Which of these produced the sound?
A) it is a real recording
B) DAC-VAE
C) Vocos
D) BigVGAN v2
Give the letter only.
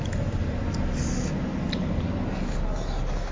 A